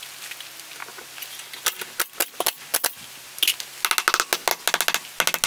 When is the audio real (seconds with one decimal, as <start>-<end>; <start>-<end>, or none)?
0.0-5.5